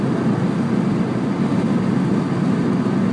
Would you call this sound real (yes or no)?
yes